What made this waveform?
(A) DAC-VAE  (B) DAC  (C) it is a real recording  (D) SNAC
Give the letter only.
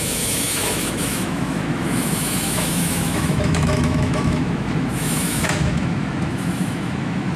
A